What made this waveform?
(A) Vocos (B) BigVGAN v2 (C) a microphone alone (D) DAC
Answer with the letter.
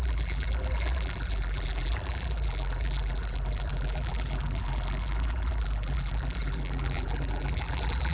B